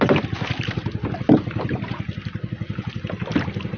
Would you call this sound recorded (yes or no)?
yes